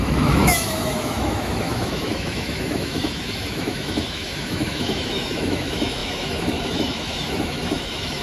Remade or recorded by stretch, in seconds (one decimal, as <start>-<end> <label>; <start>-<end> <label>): 0.0-8.2 remade